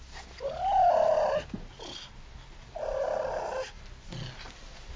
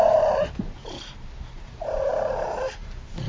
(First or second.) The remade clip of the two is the second